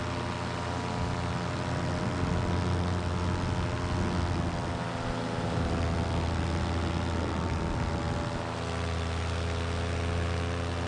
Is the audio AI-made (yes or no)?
no